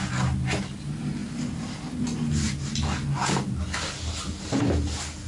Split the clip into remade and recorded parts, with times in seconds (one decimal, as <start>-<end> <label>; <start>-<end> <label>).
0.0-5.3 recorded

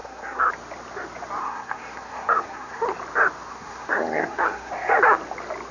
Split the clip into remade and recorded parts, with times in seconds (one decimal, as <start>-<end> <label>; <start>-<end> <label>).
0.0-0.5 remade; 0.5-1.4 recorded; 1.4-2.8 remade; 2.8-3.5 recorded; 3.5-4.7 remade; 4.7-5.7 recorded

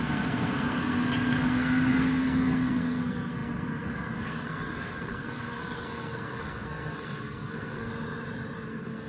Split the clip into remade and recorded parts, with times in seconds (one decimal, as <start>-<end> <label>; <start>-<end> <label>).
0.0-7.9 remade; 7.9-8.7 recorded; 8.7-9.1 remade

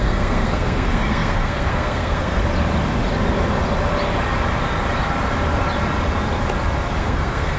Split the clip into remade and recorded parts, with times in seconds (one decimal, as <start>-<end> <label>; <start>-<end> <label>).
0.0-2.4 remade; 2.4-7.0 recorded; 7.0-7.6 remade

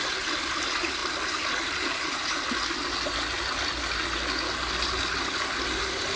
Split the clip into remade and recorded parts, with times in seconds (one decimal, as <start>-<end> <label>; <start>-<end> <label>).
0.0-6.2 recorded

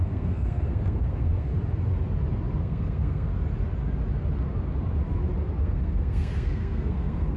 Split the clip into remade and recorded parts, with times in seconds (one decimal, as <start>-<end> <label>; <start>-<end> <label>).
0.0-1.5 remade; 1.5-2.6 recorded; 2.6-3.3 remade; 3.3-5.6 recorded; 5.6-7.4 remade

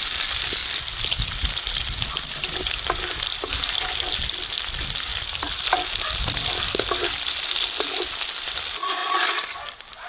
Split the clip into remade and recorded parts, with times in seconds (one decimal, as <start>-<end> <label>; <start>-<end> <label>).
0.0-10.1 recorded

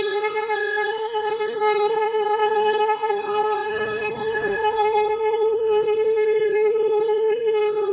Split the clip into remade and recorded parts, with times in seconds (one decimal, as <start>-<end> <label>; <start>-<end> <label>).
0.0-7.9 remade